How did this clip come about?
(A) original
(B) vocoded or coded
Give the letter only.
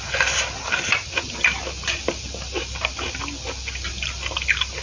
A